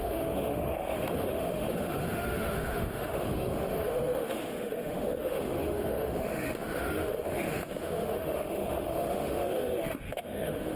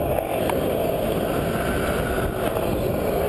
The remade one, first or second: first